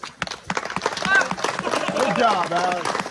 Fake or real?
real